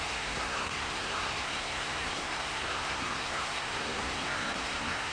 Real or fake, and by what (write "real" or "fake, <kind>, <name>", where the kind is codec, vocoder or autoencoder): fake, codec, SNAC